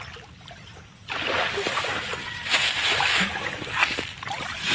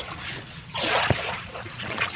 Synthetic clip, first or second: second